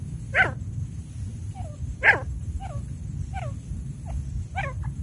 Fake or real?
real